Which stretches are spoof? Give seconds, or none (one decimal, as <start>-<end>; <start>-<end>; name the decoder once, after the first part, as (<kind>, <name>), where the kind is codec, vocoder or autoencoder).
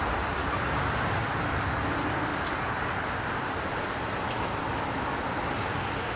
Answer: 0.0-0.4 (vocoder, BigVGAN v2); 1.7-6.2